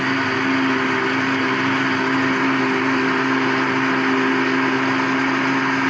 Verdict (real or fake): real